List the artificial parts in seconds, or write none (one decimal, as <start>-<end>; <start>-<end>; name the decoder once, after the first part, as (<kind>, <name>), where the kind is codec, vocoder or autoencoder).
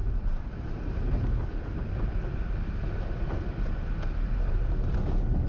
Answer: none